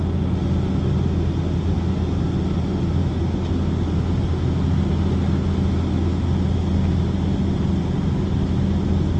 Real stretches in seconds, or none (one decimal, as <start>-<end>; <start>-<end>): 0.0-9.2